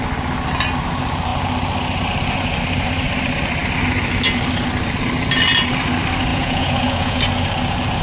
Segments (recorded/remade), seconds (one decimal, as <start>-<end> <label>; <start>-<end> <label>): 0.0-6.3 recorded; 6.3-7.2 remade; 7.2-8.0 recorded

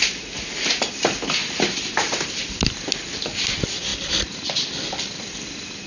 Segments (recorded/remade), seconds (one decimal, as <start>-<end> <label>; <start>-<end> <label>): 0.0-5.9 recorded

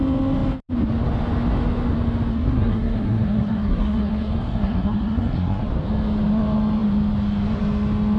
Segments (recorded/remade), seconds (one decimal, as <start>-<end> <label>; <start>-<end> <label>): 0.0-2.3 recorded; 2.3-5.7 remade; 5.7-8.2 recorded

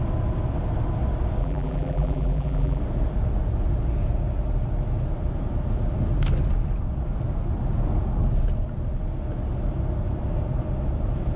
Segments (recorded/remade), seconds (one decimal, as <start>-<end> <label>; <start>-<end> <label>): 0.0-1.4 recorded; 1.4-2.8 remade; 2.8-11.4 recorded

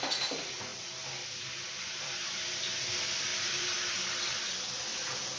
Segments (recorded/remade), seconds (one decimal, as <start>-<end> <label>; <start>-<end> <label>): 0.0-0.7 recorded; 0.7-2.8 remade; 2.8-3.3 recorded; 3.3-3.9 remade; 3.9-5.4 recorded